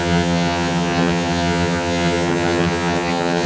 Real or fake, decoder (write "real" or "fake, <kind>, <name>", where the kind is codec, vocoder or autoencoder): fake, vocoder, HiFi-GAN